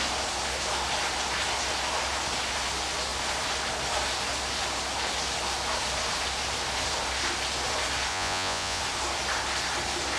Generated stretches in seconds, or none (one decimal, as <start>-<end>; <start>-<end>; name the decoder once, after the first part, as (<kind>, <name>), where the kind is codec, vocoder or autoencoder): 8.1-8.8 (vocoder, Vocos)